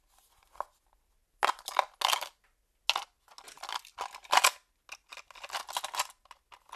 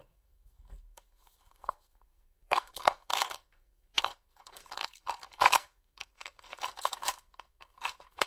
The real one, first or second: first